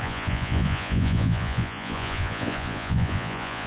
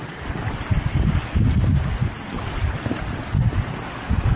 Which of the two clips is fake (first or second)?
first